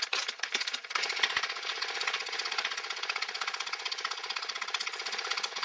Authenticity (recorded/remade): remade